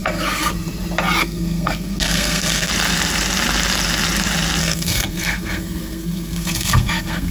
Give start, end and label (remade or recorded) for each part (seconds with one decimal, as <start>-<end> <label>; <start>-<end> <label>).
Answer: 0.0-0.5 remade; 0.5-1.2 recorded; 1.2-2.7 remade; 2.7-4.6 recorded; 4.6-7.3 remade